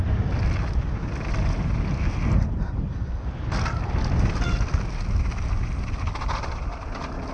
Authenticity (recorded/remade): recorded